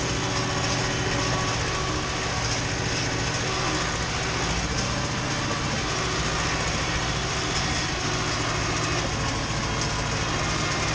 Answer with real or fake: real